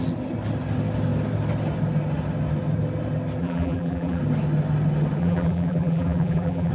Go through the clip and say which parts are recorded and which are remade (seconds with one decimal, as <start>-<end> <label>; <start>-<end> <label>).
0.0-3.4 recorded; 3.4-4.2 remade; 4.2-5.2 recorded; 5.2-6.7 remade

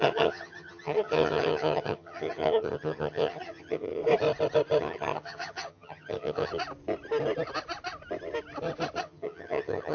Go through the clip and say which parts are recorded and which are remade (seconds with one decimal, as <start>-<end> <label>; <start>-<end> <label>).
0.0-4.0 remade; 4.0-4.8 recorded; 4.8-6.5 remade; 6.5-9.0 recorded; 9.0-9.9 remade

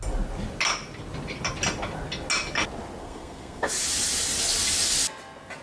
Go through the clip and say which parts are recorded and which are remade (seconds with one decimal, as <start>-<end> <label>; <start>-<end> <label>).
0.0-3.0 recorded; 3.0-3.7 remade; 3.7-5.6 recorded